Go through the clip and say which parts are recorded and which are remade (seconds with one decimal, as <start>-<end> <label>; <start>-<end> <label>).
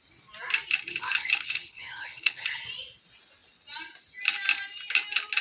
0.0-0.9 recorded; 0.9-2.6 remade; 2.6-5.4 recorded